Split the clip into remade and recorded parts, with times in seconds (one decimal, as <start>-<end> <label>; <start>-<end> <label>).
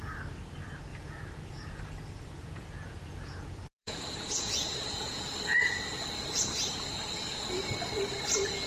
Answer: 0.0-0.9 recorded; 0.9-5.2 remade; 5.2-8.7 recorded